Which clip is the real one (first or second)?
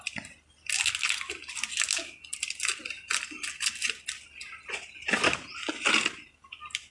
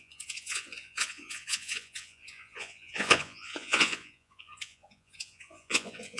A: first